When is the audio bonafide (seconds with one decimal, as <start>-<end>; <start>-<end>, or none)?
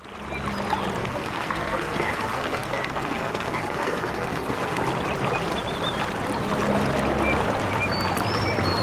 0.0-1.0; 4.8-8.8